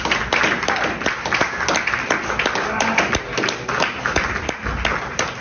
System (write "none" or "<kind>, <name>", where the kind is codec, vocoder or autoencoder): none